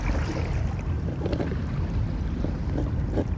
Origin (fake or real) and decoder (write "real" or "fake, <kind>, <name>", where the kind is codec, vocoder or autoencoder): fake, vocoder, BigVGAN v2